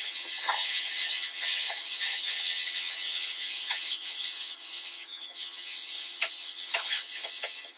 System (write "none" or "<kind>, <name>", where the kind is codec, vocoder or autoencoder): vocoder, HiFi-GAN